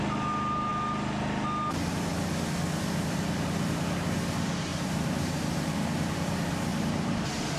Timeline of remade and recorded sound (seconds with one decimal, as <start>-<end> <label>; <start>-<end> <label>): 0.0-4.7 recorded; 4.7-5.7 remade; 5.7-6.7 recorded; 6.7-7.6 remade